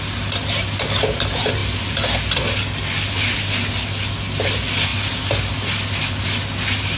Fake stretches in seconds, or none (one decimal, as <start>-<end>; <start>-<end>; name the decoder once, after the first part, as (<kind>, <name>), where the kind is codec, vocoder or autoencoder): none

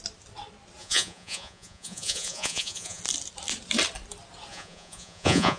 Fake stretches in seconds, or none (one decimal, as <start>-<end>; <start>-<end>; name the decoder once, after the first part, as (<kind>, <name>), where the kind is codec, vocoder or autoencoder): 0.8-3.0 (vocoder, Vocos); 4.5-5.6

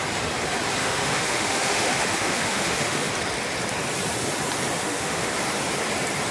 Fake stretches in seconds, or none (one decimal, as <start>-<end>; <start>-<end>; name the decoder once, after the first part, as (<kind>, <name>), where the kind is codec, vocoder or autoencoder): 0.8-3.1 (autoencoder, DAC-VAE); 4.8-5.3

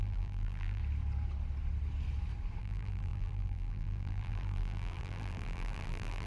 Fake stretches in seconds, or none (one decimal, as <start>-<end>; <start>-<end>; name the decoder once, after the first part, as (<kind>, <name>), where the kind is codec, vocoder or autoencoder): 0.0-0.8 (vocoder, BigVGAN v2); 2.6-6.3

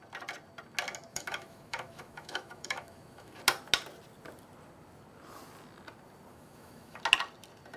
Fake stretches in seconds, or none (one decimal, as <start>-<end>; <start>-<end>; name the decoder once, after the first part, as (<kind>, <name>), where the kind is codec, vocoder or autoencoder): 1.1-3.4 (autoencoder, DAC-VAE); 6.3-7.0

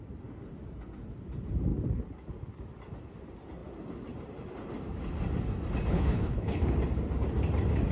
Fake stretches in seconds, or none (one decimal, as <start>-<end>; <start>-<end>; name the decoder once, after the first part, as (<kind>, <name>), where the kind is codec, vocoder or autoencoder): 5.9-6.6 (codec, HILCodec)